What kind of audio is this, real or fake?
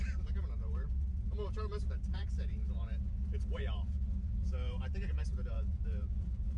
fake